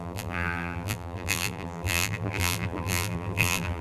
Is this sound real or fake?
fake